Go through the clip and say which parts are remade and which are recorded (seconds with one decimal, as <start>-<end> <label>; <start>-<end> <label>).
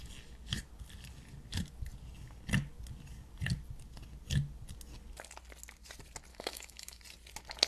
0.0-6.3 recorded; 6.3-7.0 remade; 7.0-7.7 recorded